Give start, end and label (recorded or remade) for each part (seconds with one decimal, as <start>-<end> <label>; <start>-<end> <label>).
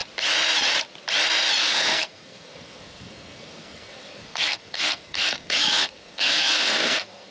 0.0-1.6 recorded; 1.6-7.3 remade